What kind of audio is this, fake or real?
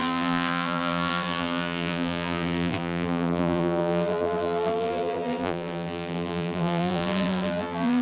fake